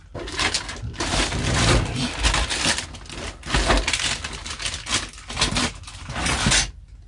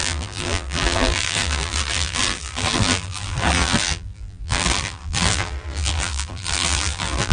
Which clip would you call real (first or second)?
first